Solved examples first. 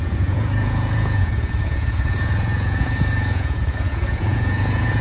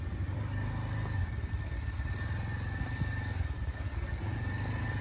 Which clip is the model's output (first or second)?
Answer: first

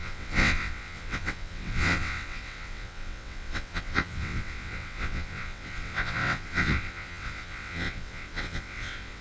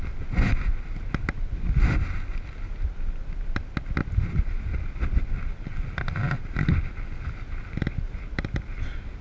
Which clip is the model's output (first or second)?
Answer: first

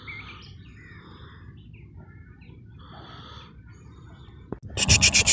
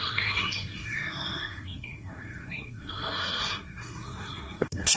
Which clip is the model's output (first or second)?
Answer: second